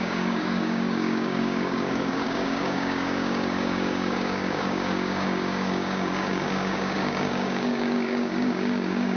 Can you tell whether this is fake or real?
fake